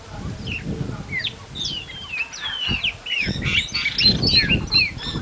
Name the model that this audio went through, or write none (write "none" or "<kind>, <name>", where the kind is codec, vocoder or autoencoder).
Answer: none